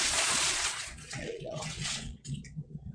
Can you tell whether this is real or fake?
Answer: fake